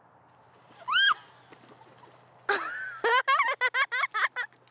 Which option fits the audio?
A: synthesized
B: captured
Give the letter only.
B